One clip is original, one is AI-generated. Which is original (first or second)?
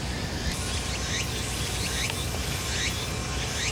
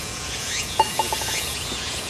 first